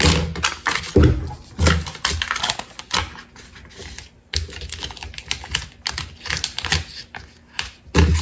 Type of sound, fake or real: real